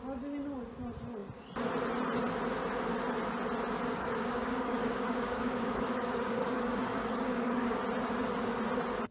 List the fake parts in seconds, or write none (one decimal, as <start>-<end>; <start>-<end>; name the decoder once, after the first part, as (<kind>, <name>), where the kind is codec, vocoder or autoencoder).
3.9-7.8 (codec, DAC)